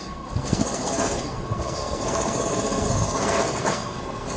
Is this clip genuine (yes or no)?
no